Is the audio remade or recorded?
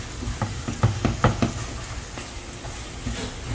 recorded